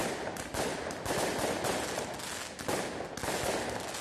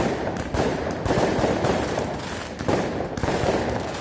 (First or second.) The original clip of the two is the first